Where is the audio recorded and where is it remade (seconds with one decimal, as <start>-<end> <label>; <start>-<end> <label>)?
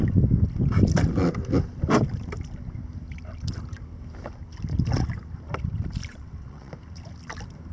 0.0-6.1 recorded; 6.1-6.7 remade; 6.7-7.7 recorded